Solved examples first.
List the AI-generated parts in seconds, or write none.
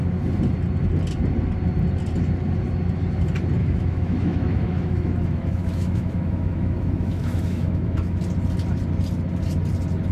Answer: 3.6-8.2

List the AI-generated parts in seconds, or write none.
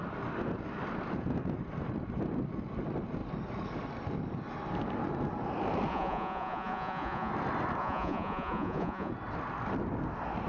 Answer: 5.9-7.3; 7.8-9.1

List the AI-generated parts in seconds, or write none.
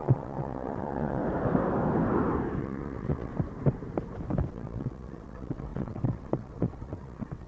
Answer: 0.0-1.2; 2.6-3.3; 4.5-7.5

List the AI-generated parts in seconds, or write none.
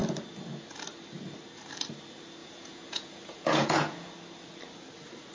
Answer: 2.4-4.1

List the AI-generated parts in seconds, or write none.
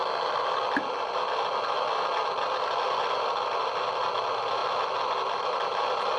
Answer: none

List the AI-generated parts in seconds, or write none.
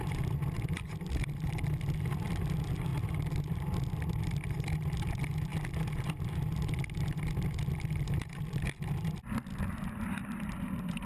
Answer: none